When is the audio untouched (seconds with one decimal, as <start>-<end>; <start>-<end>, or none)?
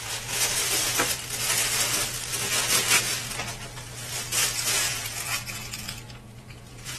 0.6-4.5